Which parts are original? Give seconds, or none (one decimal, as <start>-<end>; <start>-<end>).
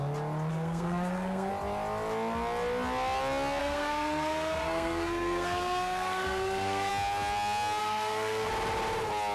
0.0-0.5; 1.5-3.6; 6.9-7.8; 8.5-9.3